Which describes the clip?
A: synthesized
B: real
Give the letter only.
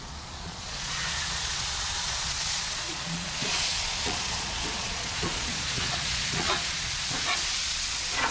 A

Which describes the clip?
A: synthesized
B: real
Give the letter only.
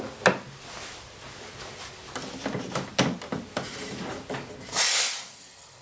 B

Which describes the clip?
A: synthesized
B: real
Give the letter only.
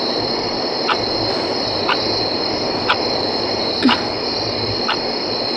B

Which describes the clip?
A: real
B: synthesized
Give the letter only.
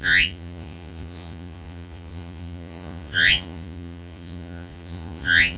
B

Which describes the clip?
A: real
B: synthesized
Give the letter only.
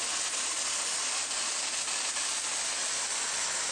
A